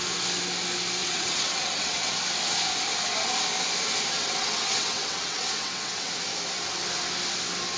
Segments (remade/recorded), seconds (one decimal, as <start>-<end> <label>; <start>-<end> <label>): 0.0-1.0 recorded; 1.0-2.1 remade; 2.1-4.1 recorded; 4.1-6.1 remade; 6.1-7.8 recorded